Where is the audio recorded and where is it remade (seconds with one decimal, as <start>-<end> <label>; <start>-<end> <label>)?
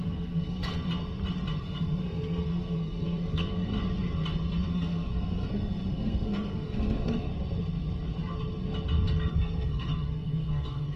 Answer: 0.0-0.7 remade; 0.7-1.6 recorded; 1.6-3.7 remade; 3.7-4.7 recorded; 4.7-7.3 remade; 7.3-9.3 recorded; 9.3-11.0 remade